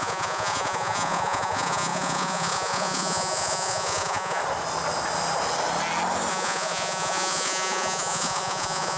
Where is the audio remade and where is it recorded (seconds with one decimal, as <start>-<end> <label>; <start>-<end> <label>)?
0.0-4.4 remade; 4.4-6.3 recorded; 6.3-9.0 remade

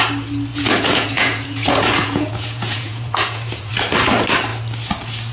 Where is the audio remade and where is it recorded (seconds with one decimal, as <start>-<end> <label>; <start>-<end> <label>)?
0.0-0.5 recorded; 0.5-3.7 remade; 3.7-5.3 recorded

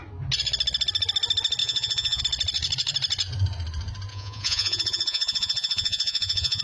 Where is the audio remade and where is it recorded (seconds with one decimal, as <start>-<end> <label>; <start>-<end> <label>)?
0.0-1.6 recorded; 1.6-2.2 remade; 2.2-4.1 recorded; 4.1-6.6 remade